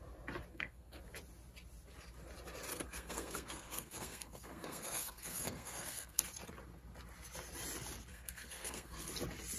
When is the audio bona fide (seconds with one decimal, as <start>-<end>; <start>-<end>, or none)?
0.0-0.5; 1.0-2.7; 6.2-8.1; 9.1-9.6